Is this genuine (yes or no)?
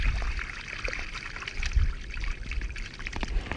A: yes